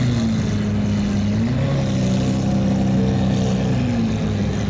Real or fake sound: real